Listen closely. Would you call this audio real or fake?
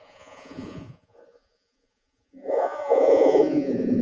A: fake